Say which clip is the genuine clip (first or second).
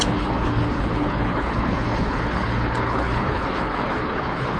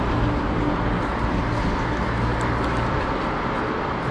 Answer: second